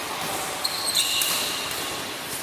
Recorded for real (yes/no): yes